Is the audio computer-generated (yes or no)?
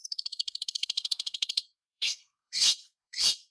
yes